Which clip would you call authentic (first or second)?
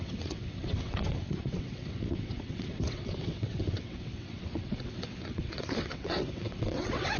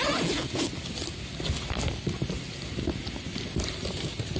second